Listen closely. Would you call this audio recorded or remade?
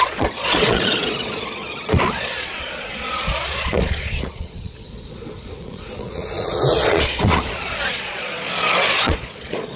remade